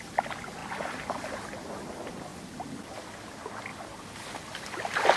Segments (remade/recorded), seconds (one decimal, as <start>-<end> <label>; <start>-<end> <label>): 0.0-0.6 recorded; 0.6-1.3 remade; 1.3-2.3 recorded; 2.3-3.1 remade; 3.1-3.7 recorded; 3.7-5.2 remade